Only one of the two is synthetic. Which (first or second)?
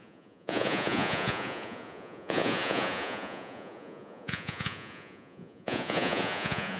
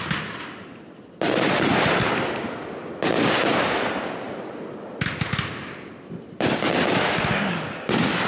first